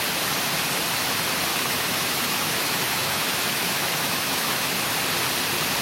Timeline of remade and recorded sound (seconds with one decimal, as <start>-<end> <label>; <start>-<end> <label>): 0.0-1.5 recorded; 1.5-4.8 remade; 4.8-5.8 recorded